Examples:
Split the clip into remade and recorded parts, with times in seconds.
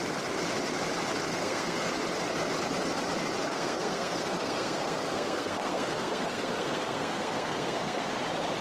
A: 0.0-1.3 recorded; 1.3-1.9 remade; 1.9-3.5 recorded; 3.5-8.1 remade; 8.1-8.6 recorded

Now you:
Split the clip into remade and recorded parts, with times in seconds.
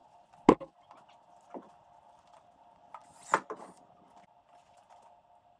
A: 0.0-5.6 recorded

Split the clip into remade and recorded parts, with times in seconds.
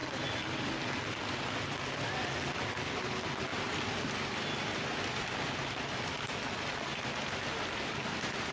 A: 0.0-3.5 recorded; 3.5-5.4 remade; 5.4-8.5 recorded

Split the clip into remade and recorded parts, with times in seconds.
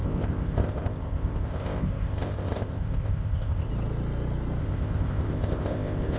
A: 0.0-3.7 remade; 3.7-4.6 recorded; 4.6-6.2 remade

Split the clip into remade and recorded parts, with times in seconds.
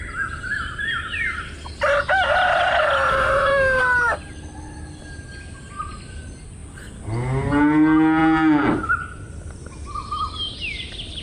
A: 0.0-3.1 recorded; 3.1-3.8 remade; 3.8-11.2 recorded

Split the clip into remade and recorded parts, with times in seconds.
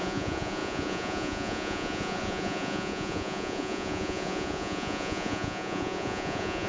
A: 0.0-6.7 remade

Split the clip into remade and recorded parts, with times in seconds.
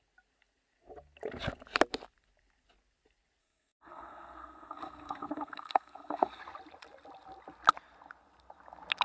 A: 0.0-3.4 recorded; 3.4-6.4 remade; 6.4-9.0 recorded